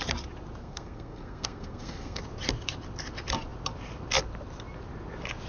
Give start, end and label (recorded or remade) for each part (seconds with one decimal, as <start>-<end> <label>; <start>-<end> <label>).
0.0-0.6 recorded; 0.6-2.2 remade; 2.2-5.5 recorded